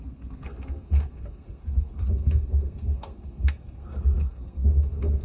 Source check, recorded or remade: remade